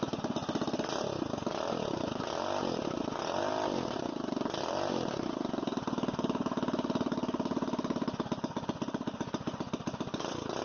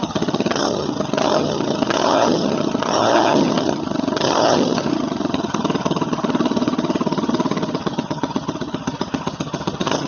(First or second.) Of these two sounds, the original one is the first